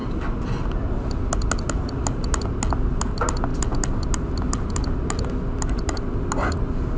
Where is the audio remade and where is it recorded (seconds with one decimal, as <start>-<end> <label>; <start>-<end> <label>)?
0.0-7.0 recorded